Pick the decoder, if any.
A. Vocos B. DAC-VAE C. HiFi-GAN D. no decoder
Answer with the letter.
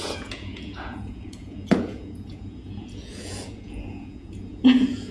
A